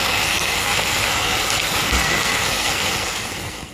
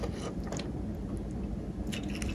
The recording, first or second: second